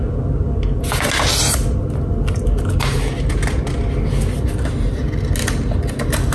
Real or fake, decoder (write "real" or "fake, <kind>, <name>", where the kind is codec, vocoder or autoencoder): real